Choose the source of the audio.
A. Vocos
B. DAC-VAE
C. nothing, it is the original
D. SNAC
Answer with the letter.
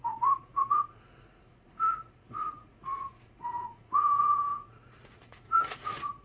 A